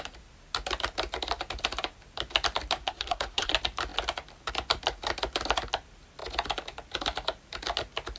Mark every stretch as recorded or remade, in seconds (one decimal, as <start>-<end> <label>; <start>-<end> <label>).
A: 0.0-2.8 recorded; 2.8-3.5 remade; 3.5-8.2 recorded